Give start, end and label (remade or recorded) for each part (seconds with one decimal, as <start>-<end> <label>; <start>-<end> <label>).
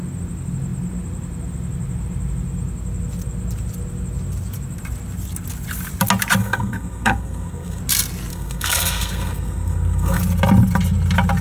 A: 0.0-6.4 recorded; 6.4-7.8 remade; 7.8-8.3 recorded; 8.3-10.2 remade; 10.2-11.4 recorded